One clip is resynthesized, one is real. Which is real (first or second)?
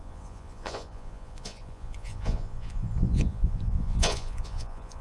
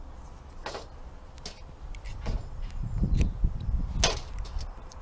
second